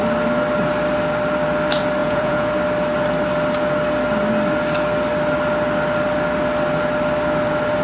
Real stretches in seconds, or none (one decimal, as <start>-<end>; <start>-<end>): 0.0-2.0; 2.5-7.8